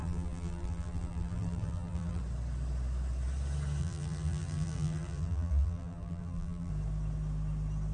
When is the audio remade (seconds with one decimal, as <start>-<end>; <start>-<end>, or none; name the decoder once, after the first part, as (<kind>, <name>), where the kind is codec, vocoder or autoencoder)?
0.0-2.2 (vocoder, BigVGAN v2); 3.8-6.7